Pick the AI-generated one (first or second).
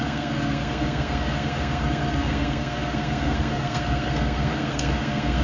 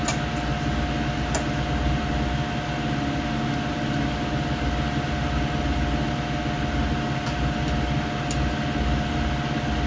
first